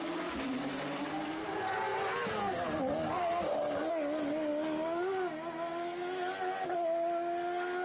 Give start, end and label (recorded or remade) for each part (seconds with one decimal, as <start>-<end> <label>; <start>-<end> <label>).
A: 0.0-7.8 recorded